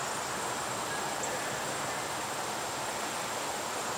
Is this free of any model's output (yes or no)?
yes